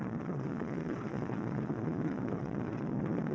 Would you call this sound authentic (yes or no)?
no